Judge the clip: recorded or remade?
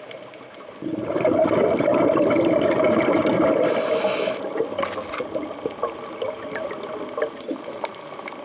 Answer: recorded